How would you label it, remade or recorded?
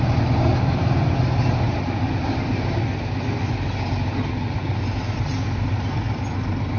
recorded